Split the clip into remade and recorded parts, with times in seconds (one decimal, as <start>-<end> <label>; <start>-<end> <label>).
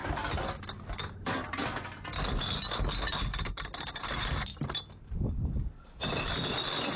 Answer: 0.0-7.0 recorded